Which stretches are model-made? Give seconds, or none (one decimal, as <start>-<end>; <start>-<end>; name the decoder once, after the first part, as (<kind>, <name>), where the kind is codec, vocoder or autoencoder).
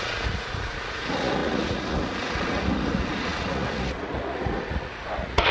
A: 0.0-5.5 (vocoder, Vocos)